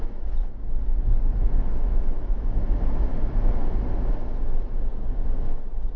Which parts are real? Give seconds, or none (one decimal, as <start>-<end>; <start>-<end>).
0.0-1.9; 2.5-6.0